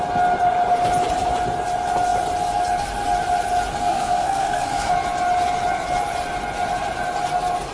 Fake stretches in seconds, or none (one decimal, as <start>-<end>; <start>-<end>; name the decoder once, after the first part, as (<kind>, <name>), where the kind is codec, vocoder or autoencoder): 3.9-4.9 (codec, SNAC)